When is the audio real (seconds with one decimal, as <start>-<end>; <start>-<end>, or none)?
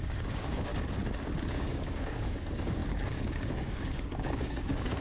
0.7-1.5